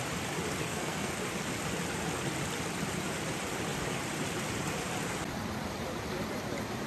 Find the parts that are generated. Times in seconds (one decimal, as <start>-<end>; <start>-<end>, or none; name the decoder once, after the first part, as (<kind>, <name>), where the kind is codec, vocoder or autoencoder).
0.6-1.1 (codec, SNAC)